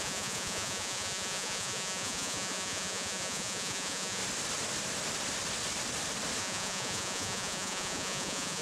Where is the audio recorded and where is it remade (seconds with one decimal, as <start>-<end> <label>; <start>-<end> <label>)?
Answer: 0.0-4.2 remade; 4.2-6.4 recorded; 6.4-8.6 remade